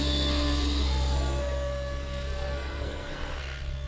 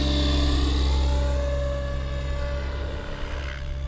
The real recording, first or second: second